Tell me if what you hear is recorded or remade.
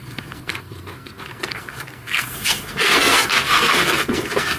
remade